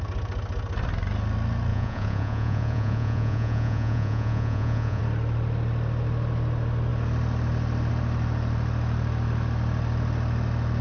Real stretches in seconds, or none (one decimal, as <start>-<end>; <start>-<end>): 0.0-1.7; 5.0-10.8